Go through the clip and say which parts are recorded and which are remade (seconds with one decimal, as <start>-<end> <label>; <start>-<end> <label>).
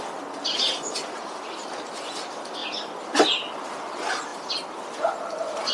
0.0-5.7 recorded